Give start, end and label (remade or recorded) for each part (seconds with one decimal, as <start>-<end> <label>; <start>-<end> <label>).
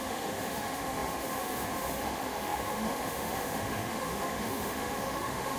0.0-5.6 remade